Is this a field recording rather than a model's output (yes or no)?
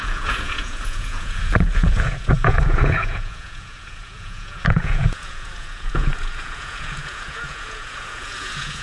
no